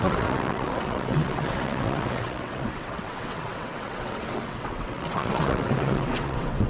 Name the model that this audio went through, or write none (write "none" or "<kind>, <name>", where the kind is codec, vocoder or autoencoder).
vocoder, WaveNeXt